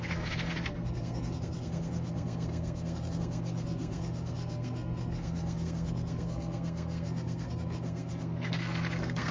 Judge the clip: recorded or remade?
remade